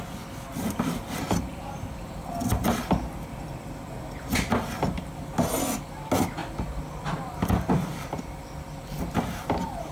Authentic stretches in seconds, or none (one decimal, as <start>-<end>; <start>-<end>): 0.0-0.5; 5.1-9.9

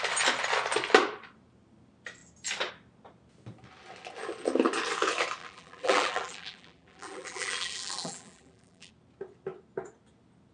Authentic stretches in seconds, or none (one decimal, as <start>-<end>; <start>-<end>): 0.0-5.4; 8.9-10.5

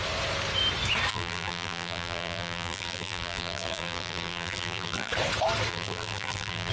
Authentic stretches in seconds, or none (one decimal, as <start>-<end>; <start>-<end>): 0.0-1.1; 5.1-5.7